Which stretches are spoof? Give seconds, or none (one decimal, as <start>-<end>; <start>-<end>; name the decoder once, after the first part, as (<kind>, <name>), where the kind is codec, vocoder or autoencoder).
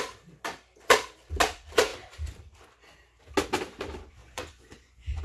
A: 4.2-5.2 (vocoder, Vocos)